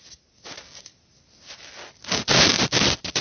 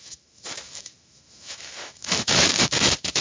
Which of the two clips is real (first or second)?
first